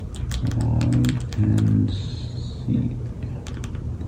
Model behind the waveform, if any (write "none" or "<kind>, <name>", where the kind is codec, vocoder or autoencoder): none